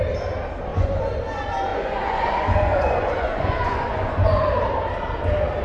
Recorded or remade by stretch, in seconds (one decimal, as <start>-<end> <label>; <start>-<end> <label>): 0.0-0.7 recorded; 0.7-1.2 remade; 1.2-1.7 recorded; 1.7-4.5 remade; 4.5-5.6 recorded

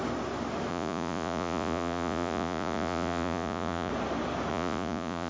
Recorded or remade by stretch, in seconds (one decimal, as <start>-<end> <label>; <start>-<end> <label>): 0.0-0.7 recorded; 0.7-3.9 remade; 3.9-4.5 recorded; 4.5-5.3 remade

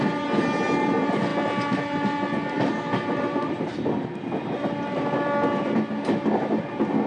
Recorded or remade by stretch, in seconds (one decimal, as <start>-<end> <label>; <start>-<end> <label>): 0.0-7.1 recorded

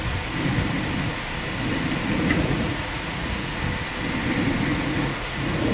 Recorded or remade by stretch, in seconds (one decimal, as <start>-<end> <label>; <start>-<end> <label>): 0.0-2.2 recorded; 2.2-3.6 remade; 3.6-4.7 recorded; 4.7-5.7 remade

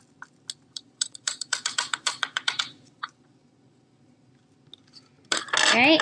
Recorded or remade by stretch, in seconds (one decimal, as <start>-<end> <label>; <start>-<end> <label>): 0.0-0.7 recorded; 0.7-4.3 remade; 4.3-6.0 recorded

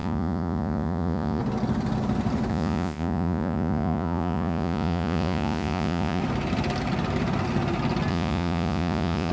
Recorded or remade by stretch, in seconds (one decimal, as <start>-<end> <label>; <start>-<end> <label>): 0.0-1.4 remade; 1.4-2.5 recorded; 2.5-6.2 remade; 6.2-8.1 recorded; 8.1-9.3 remade

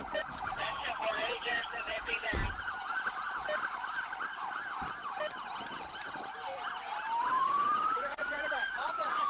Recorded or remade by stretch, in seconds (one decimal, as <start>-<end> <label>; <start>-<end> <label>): 0.0-2.4 remade; 2.4-7.2 recorded; 7.2-9.3 remade